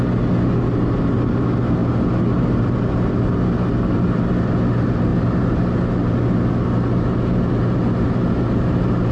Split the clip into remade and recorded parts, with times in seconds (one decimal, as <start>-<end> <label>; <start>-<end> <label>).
0.0-9.1 recorded